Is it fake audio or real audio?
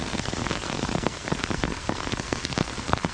fake